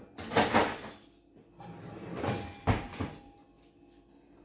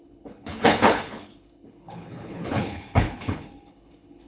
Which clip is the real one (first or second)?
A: first